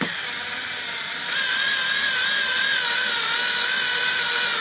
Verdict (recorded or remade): recorded